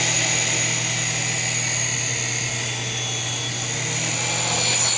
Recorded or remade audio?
recorded